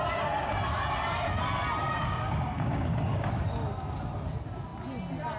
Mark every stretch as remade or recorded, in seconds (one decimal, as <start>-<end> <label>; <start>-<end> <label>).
0.0-1.8 recorded; 1.8-3.3 remade; 3.3-5.4 recorded

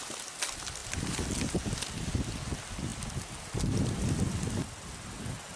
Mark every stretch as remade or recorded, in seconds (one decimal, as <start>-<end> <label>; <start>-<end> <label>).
0.0-5.6 recorded

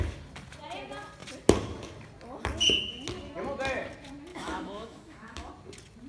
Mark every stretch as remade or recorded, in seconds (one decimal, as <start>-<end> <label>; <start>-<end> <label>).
0.0-4.3 recorded; 4.3-5.5 remade; 5.5-6.1 recorded

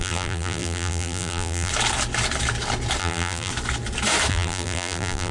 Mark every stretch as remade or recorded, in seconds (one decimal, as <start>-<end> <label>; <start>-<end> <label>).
0.0-1.7 remade; 1.7-3.0 recorded; 3.0-3.5 remade; 3.5-4.3 recorded; 4.3-5.3 remade

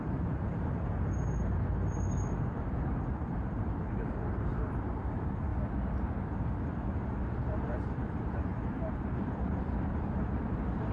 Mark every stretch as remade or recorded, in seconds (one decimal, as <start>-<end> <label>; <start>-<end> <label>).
0.0-5.5 remade; 5.5-6.3 recorded; 6.3-10.9 remade